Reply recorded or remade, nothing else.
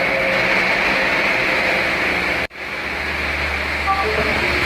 recorded